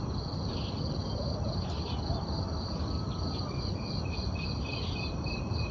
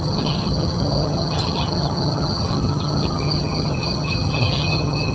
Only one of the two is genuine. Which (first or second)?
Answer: first